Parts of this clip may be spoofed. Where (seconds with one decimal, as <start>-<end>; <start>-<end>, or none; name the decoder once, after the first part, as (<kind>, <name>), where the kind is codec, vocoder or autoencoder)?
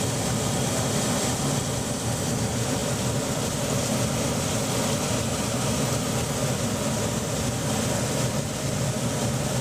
none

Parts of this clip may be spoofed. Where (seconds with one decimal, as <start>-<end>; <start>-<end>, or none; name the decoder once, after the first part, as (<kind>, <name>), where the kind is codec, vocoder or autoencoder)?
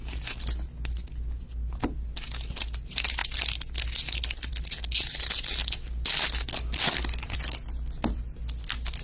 none